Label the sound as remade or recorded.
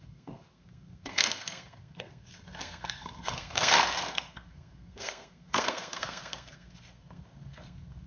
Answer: remade